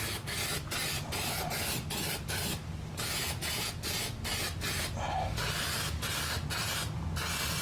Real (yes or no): yes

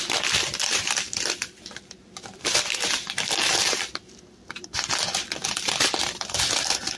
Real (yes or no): no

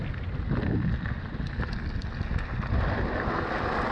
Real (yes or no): yes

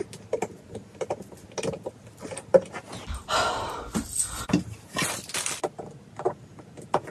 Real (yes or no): yes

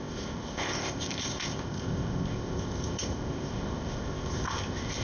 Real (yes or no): no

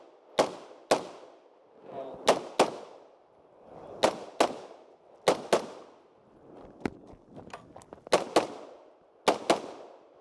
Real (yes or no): yes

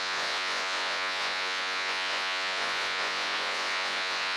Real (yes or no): no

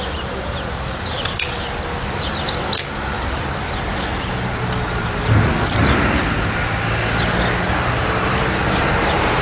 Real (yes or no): yes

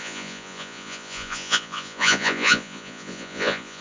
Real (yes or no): no